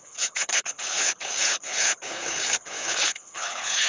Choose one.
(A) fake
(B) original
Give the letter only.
A